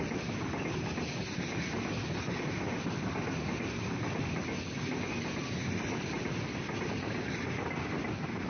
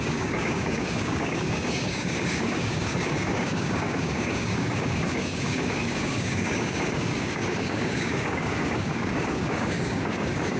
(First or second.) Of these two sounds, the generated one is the second